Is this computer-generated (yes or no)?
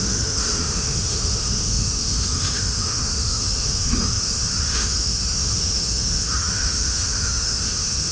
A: yes